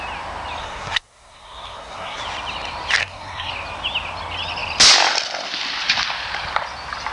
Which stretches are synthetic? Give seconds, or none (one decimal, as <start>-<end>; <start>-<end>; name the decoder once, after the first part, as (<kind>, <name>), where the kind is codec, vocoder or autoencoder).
0.6-2.2 (codec, SNAC); 3.0-3.5